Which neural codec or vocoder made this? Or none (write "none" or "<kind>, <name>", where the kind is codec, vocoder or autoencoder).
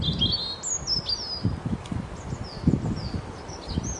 none